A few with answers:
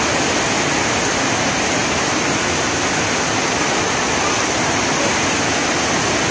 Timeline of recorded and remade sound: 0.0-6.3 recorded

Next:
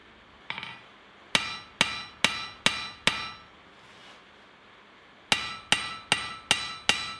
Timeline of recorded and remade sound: 0.0-7.2 recorded

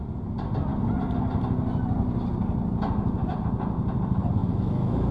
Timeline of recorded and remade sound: 0.0-4.4 recorded; 4.4-5.1 remade

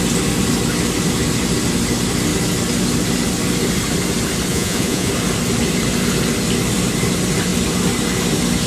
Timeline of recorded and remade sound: 0.0-4.5 recorded; 4.5-5.1 remade; 5.1-8.7 recorded

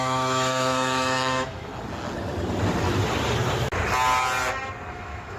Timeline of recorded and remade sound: 0.0-1.7 remade; 1.7-4.9 recorded; 4.9-5.4 remade

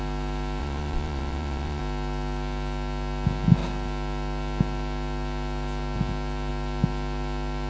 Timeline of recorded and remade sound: 0.0-0.6 recorded; 0.6-1.8 remade; 1.8-7.7 recorded